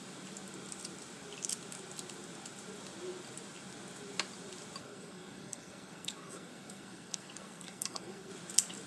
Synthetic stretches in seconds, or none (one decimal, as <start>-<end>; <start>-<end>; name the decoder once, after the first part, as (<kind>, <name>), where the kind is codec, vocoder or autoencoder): 4.8-8.3 (codec, SNAC)